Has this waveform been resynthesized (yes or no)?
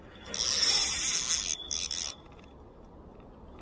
no